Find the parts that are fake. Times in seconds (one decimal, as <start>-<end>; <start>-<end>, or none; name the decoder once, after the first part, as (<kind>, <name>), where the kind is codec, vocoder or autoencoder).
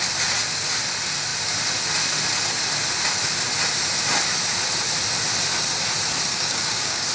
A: 6.3-7.1 (codec, DAC)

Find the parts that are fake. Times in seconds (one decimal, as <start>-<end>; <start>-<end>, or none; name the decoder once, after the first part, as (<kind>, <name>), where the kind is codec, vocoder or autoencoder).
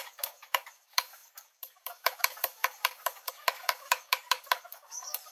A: 0.0-5.3 (codec, DAC)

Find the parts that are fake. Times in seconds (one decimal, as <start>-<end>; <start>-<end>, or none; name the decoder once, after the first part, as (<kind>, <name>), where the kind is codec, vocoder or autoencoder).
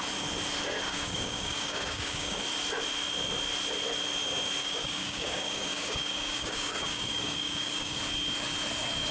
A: 0.9-2.4 (codec, DAC); 4.6-8.0